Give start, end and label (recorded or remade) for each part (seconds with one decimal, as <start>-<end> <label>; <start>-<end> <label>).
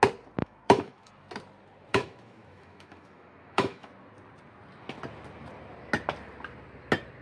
0.0-0.4 recorded; 0.4-1.1 remade; 1.1-1.9 recorded; 1.9-3.9 remade; 3.9-7.2 recorded